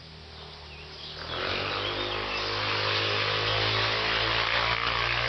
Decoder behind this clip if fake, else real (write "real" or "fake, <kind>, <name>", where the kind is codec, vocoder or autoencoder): real